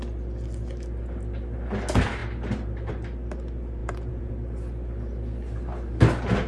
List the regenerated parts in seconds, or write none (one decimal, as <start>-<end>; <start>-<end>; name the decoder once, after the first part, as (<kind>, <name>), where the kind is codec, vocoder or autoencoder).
3.8-4.3 (vocoder, Vocos)